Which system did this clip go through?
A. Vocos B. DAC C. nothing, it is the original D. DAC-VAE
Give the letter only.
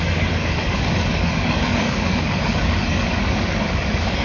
B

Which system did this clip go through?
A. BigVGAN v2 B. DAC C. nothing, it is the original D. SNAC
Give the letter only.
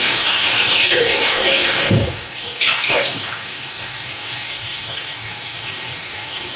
B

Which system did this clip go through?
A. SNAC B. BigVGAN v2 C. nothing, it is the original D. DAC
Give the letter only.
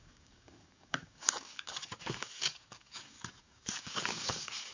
D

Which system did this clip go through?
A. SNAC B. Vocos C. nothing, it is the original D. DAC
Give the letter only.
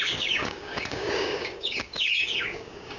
D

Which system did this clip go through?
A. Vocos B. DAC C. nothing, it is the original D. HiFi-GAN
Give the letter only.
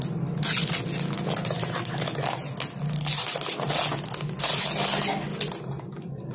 C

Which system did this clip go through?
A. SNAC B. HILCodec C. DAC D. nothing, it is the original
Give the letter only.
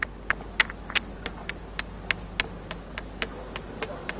D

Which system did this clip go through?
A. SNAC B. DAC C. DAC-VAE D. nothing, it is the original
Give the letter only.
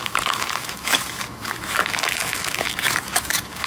B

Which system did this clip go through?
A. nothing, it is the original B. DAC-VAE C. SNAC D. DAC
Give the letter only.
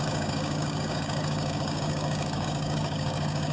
D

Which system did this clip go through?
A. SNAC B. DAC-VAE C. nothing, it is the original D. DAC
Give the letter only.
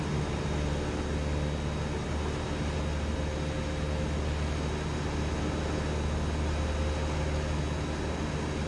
C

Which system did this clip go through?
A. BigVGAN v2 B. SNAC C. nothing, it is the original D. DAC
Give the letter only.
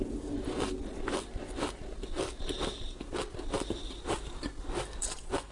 C